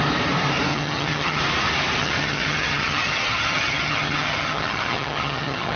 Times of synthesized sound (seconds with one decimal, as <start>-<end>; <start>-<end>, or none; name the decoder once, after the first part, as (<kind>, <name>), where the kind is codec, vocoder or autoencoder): 0.7-1.4 (vocoder, HiFi-GAN); 2.0-5.8